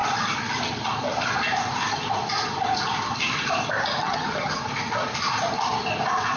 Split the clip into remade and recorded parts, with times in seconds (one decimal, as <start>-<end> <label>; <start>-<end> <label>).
0.0-4.0 recorded; 4.0-4.6 remade; 4.6-6.4 recorded